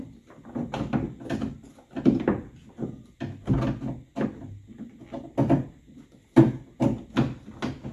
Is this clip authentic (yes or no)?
yes